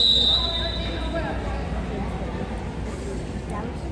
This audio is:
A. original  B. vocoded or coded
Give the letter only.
A